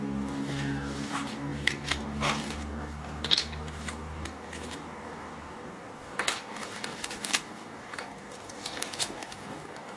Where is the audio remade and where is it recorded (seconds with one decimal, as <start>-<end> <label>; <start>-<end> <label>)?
0.0-10.0 remade